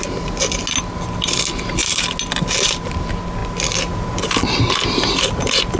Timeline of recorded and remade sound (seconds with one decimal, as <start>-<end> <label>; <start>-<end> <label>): 0.0-5.8 recorded